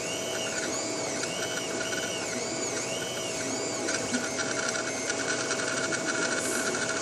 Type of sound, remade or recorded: recorded